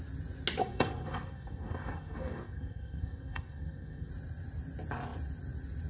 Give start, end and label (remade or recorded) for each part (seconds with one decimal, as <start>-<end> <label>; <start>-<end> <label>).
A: 0.0-0.6 recorded; 0.6-4.1 remade; 4.1-5.9 recorded